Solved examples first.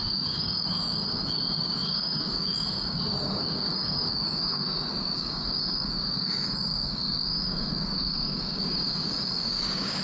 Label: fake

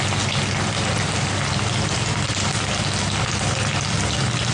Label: real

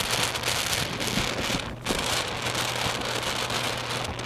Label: real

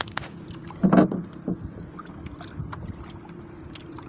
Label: real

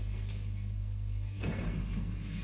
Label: fake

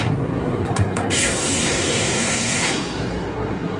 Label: fake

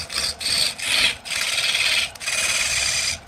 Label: real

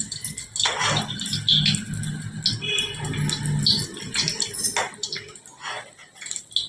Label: real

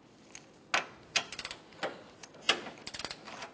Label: real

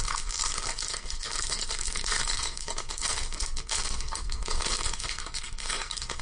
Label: fake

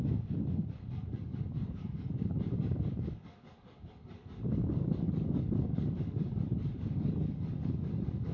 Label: fake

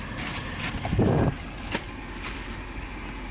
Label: real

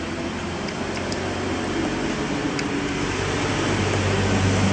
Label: real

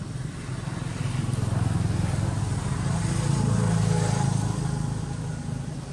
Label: real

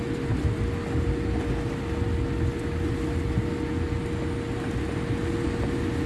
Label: real